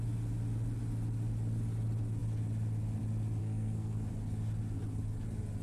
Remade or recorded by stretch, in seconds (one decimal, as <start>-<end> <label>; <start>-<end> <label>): 0.0-3.4 recorded; 3.4-4.1 remade; 4.1-5.6 recorded